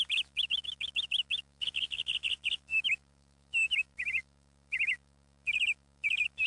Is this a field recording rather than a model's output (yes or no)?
no